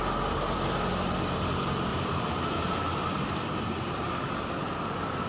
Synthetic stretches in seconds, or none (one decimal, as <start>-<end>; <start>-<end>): 1.9-4.2